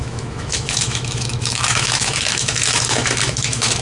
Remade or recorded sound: remade